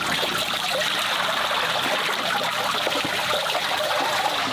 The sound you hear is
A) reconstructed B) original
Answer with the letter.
B